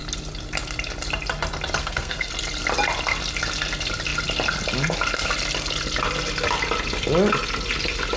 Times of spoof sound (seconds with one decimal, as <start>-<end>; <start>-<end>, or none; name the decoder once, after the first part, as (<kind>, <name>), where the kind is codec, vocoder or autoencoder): 1.8-2.3 (codec, SNAC)